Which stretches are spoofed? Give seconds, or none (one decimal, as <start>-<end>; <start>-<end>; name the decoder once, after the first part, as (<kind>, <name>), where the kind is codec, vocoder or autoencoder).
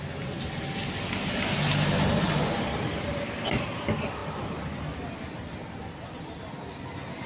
none